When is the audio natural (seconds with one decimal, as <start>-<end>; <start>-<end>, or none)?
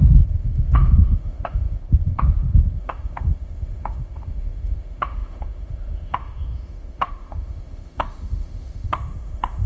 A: none